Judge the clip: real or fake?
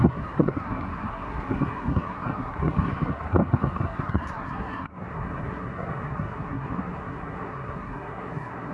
fake